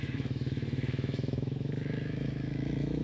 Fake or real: fake